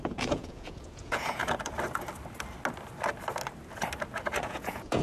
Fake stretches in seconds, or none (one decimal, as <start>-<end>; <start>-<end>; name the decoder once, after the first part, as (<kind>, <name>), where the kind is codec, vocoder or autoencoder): 0.0-1.4 (vocoder, Vocos); 4.4-5.0